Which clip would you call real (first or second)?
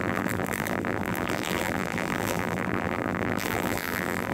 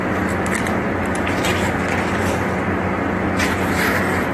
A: second